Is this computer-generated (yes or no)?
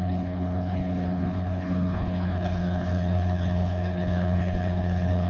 yes